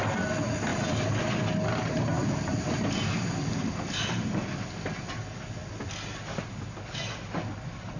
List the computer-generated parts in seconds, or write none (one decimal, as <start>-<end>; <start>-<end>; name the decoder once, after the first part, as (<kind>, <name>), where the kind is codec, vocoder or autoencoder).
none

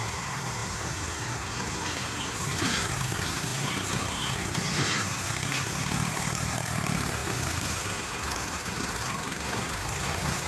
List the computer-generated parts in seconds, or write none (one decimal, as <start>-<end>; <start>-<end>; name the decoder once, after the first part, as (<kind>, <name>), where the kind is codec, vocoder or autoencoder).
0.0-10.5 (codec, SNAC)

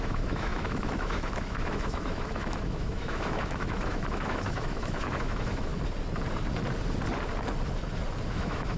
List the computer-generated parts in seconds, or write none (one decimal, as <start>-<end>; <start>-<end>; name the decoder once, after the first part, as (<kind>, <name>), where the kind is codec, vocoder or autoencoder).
0.0-5.7 (autoencoder, DAC-VAE); 8.3-8.8

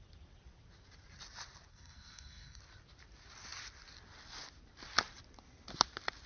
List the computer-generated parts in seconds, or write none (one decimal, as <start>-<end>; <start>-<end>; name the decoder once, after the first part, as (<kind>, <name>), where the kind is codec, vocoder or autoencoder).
1.7-2.6 (codec, SNAC)

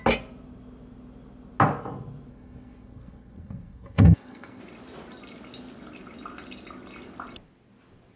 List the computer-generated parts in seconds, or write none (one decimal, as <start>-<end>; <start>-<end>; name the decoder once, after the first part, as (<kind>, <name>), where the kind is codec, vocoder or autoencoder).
2.3-4.6 (codec, SNAC)